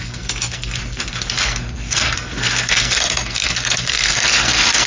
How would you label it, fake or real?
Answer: fake